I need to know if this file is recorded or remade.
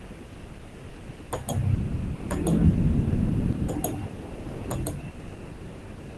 recorded